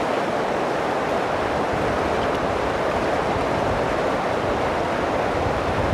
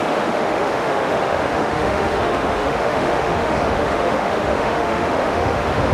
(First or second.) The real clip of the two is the first